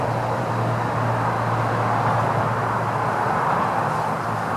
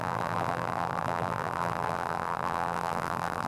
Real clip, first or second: first